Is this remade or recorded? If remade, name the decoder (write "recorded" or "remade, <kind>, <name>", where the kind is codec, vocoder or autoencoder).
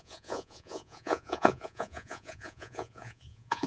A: remade, vocoder, Vocos